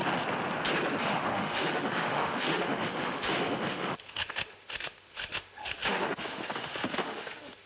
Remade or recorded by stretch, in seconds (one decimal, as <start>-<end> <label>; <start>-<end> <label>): 0.0-1.0 recorded; 1.0-7.7 remade